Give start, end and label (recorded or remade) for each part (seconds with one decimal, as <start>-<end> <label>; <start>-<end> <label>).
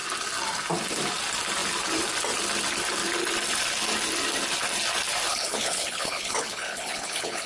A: 0.0-5.3 recorded; 5.3-7.5 remade